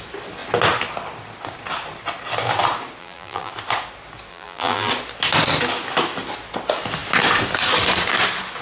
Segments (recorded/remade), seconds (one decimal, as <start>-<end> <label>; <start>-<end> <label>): 0.0-3.0 recorded; 3.0-3.5 remade; 3.5-4.3 recorded; 4.3-4.9 remade; 4.9-8.6 recorded